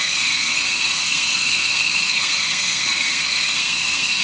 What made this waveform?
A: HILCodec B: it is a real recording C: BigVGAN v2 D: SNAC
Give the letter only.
D